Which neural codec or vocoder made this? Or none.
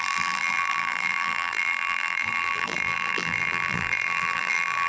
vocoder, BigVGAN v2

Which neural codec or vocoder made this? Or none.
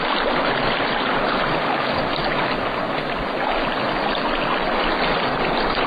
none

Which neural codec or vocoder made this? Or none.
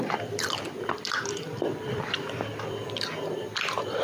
vocoder, BigVGAN v2